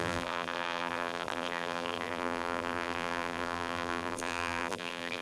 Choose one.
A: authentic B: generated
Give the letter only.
B